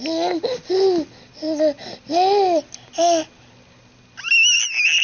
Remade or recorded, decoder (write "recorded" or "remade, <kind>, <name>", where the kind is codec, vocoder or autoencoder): recorded